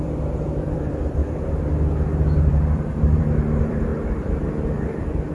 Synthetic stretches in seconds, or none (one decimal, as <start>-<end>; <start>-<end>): 0.0-1.2; 2.4-5.3